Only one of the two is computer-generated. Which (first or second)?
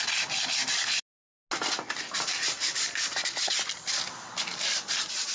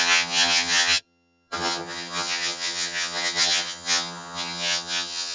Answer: second